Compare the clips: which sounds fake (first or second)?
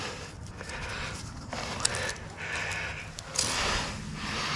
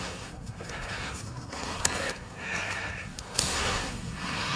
second